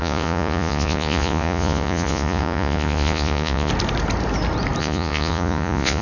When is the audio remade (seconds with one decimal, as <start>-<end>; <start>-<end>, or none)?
0.0-3.7; 4.8-6.0